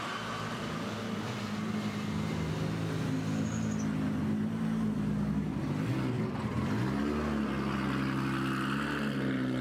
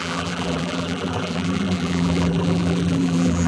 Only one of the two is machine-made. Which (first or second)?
second